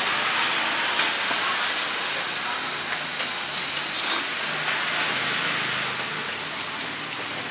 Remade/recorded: recorded